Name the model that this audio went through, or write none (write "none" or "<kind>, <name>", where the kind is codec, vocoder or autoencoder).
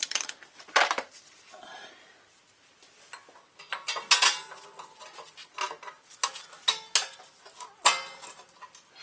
none